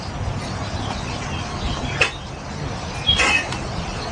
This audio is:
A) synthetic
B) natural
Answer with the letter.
B